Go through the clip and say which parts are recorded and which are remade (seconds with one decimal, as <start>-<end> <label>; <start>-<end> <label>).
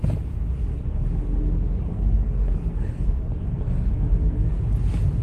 0.0-0.7 recorded; 0.7-1.5 remade; 1.5-1.9 recorded; 1.9-4.6 remade; 4.6-5.2 recorded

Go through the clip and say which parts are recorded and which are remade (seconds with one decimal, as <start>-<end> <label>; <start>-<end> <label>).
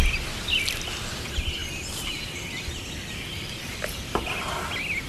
0.0-5.1 recorded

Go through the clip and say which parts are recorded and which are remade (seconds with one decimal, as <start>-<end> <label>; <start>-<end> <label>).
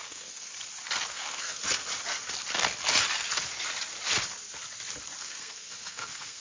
0.0-0.5 remade; 0.5-1.1 recorded; 1.1-1.6 remade; 1.6-5.2 recorded; 5.2-6.4 remade